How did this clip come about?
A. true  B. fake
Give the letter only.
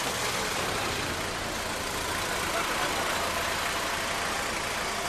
A